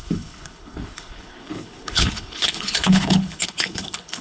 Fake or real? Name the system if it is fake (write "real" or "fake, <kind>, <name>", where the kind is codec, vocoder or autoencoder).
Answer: fake, codec, HILCodec